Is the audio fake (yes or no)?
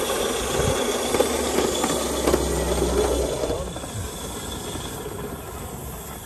no